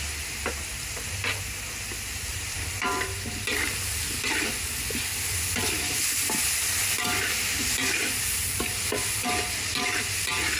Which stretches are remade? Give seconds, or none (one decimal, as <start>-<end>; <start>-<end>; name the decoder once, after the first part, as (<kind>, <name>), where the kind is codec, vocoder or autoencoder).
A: 2.3-3.4 (vocoder, BigVGAN v2)